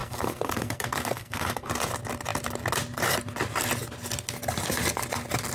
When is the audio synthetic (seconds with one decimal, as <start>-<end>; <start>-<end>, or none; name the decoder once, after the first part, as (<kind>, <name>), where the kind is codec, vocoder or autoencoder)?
0.0-1.7 (codec, SNAC)